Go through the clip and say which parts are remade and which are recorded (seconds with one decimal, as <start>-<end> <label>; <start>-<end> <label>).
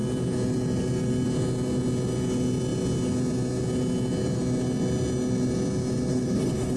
0.0-6.1 recorded; 6.1-6.8 remade